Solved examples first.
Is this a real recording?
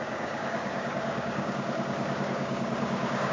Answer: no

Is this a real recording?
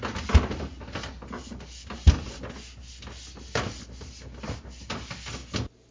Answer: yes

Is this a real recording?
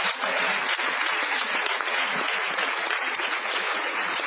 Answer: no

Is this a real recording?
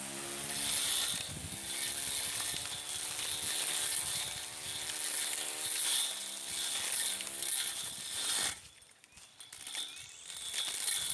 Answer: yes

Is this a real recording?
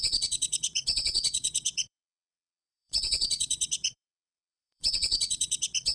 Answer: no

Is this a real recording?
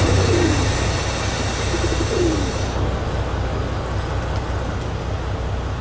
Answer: yes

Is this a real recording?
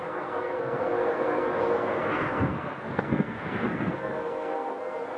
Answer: no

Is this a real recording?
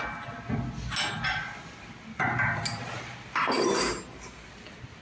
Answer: yes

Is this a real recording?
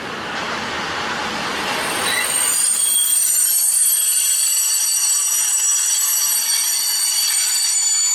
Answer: yes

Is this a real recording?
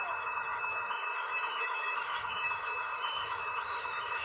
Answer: no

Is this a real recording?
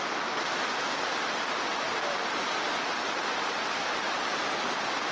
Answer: yes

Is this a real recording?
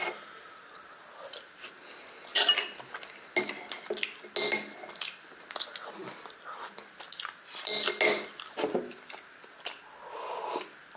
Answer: yes